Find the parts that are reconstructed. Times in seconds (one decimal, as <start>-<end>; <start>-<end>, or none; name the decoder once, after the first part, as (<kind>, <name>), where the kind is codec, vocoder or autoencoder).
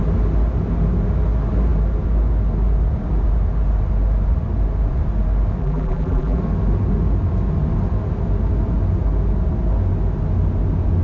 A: 5.6-6.4 (vocoder, BigVGAN v2)